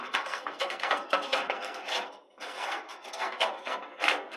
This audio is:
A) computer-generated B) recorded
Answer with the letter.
A